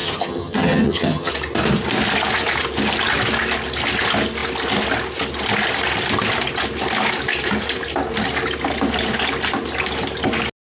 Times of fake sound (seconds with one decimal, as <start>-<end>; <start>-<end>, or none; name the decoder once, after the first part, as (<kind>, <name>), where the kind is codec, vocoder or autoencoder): 0.0-1.3 (vocoder, HiFi-GAN)